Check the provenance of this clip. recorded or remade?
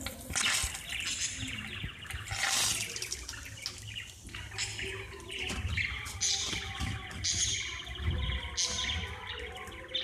recorded